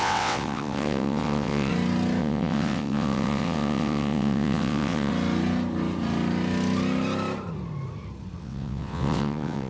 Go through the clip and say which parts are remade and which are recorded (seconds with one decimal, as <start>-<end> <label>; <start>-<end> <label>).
0.0-1.7 remade; 1.7-2.2 recorded; 2.2-5.1 remade; 5.1-8.4 recorded; 8.4-9.7 remade